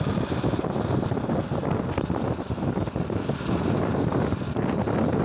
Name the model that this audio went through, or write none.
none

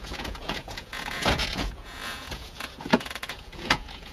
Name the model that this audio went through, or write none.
vocoder, Vocos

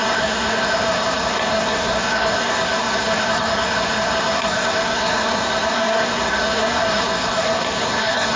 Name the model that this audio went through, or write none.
codec, SNAC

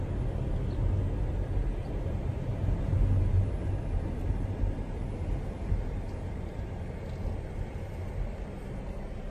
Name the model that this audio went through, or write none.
none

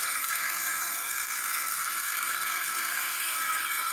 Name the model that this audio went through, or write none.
codec, SNAC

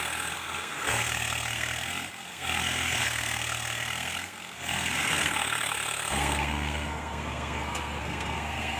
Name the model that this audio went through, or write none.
codec, SNAC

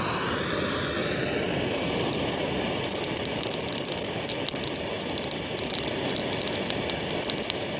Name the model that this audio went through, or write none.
none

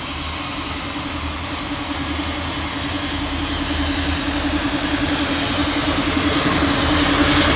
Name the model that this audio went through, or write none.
none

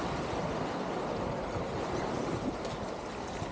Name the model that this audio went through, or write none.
none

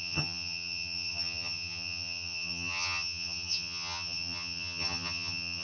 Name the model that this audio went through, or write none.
vocoder, HiFi-GAN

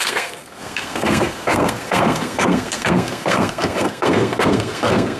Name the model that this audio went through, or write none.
codec, SNAC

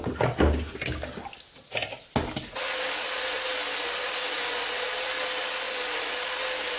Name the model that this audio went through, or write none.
none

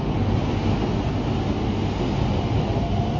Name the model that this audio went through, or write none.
none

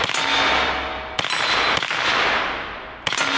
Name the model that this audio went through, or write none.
none